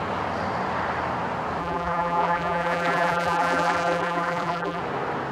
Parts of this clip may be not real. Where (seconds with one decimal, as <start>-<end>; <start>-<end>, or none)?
1.6-4.8